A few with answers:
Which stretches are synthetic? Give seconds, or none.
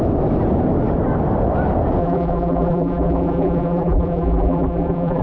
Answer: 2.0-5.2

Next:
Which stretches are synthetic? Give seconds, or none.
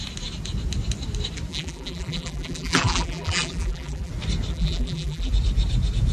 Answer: 1.5-4.1; 4.5-5.3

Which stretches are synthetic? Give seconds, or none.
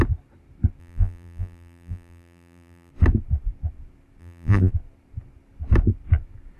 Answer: 0.8-2.9; 4.2-4.7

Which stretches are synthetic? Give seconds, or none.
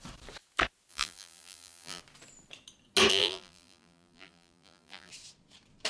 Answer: 0.9-2.0; 3.1-5.1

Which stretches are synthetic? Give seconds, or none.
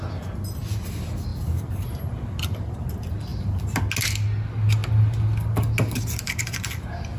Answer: 1.3-1.9; 3.3-3.8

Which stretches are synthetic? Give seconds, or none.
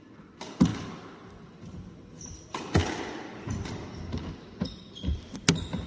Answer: none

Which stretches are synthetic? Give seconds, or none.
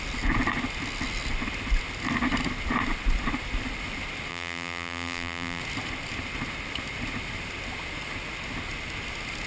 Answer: 4.3-5.6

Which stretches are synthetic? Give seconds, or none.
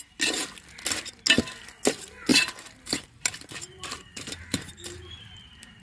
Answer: 2.3-5.8